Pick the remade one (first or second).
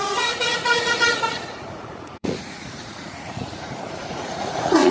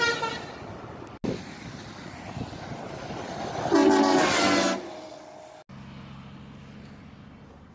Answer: first